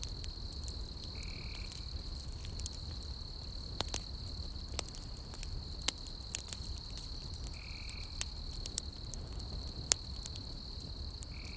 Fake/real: real